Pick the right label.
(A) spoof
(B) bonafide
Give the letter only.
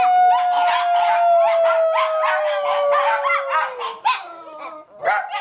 B